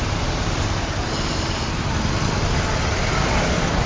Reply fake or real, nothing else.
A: real